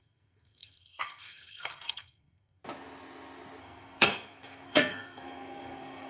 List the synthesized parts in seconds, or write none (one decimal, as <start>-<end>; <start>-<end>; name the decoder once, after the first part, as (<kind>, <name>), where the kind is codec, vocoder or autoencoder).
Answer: 0.0-2.6 (codec, SNAC); 3.6-6.1

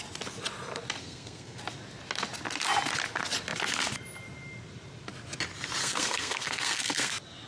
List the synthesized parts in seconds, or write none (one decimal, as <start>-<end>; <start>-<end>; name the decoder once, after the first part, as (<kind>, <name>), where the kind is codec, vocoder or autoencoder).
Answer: 1.0-1.6 (codec, SNAC); 5.8-7.1